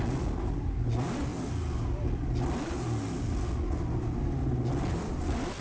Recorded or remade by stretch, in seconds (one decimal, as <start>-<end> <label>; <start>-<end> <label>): 0.0-1.3 remade; 1.3-4.7 recorded; 4.7-5.6 remade